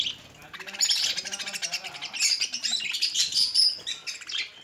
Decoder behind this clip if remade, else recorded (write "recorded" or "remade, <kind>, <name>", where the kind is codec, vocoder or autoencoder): recorded